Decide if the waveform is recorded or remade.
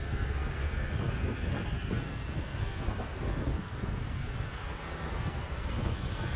remade